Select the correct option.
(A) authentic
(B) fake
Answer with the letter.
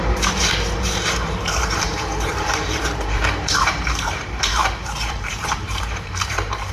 B